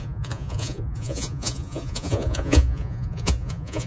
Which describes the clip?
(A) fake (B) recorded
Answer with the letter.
A